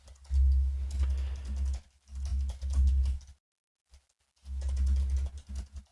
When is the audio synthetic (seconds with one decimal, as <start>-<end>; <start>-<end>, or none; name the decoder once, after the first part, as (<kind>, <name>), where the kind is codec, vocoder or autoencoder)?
none